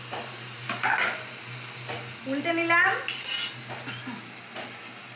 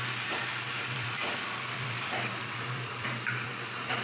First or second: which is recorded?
first